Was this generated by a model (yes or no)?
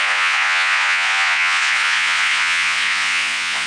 yes